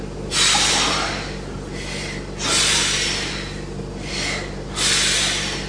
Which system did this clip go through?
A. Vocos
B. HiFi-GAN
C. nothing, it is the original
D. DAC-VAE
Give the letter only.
C